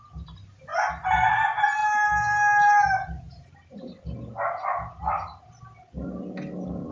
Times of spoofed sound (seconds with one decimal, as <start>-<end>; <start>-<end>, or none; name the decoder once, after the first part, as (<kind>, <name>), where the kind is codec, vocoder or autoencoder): none